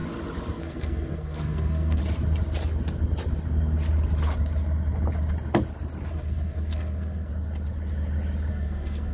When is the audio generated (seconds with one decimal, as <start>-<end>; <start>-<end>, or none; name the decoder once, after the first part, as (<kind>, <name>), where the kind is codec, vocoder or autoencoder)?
0.5-2.0 (codec, SNAC); 6.1-7.3; 8.5-9.1